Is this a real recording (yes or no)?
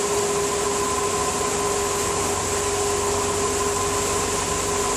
yes